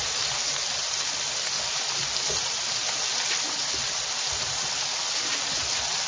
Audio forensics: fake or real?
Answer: real